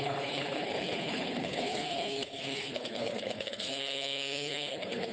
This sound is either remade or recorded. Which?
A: remade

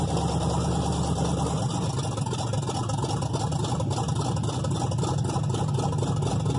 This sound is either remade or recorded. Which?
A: recorded